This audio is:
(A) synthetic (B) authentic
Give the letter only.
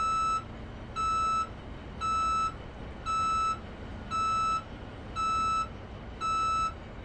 B